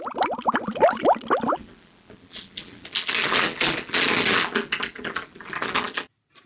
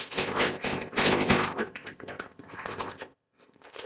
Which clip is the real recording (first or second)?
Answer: first